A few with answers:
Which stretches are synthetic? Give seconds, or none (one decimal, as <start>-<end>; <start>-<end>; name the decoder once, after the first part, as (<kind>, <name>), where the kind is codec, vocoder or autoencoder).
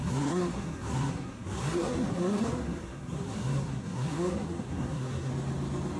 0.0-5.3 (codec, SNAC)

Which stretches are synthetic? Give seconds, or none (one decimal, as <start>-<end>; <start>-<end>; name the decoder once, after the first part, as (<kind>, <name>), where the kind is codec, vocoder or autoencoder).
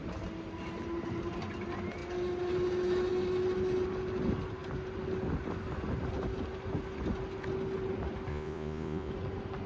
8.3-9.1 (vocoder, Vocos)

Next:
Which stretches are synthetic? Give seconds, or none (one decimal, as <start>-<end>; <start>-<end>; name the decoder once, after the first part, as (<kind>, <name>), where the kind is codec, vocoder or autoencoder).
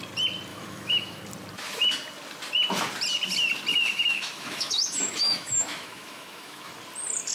0.5-1.2 (autoencoder, DAC-VAE); 3.7-6.7